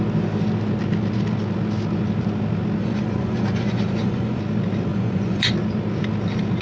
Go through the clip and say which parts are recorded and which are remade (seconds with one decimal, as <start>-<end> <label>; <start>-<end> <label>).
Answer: 0.0-2.8 recorded; 2.8-4.4 remade; 4.4-4.9 recorded; 4.9-5.5 remade; 5.5-6.6 recorded